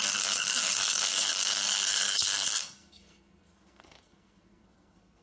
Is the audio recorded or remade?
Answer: remade